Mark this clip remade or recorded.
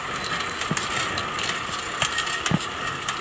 recorded